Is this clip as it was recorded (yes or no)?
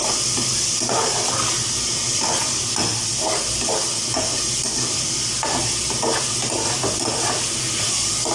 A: yes